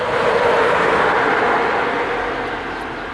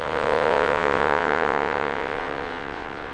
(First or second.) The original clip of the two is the first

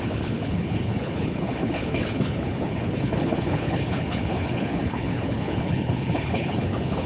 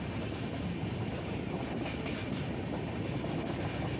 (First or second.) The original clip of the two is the second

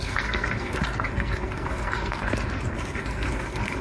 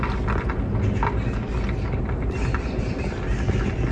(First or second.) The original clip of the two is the second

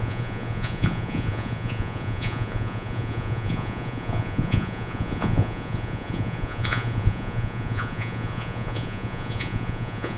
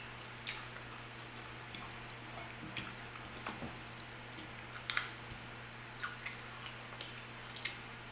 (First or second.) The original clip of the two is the second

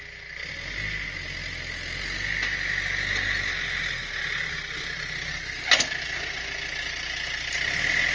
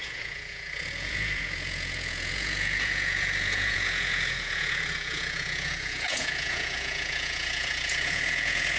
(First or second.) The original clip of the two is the first